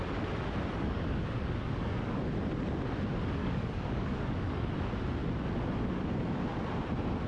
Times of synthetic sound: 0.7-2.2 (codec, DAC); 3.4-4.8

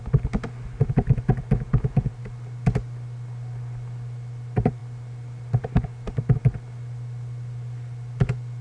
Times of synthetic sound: none

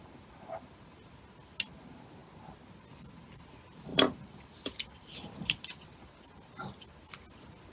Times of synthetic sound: 2.2-2.8 (vocoder, BigVGAN v2); 3.9-7.7

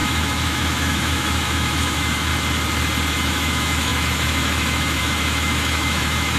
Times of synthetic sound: 0.0-2.3 (autoencoder, DAC-VAE); 3.1-6.4

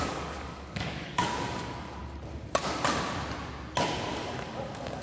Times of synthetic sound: 0.0-2.0 (codec, DAC); 4.1-5.0

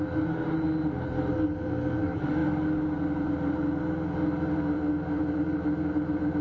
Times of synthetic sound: none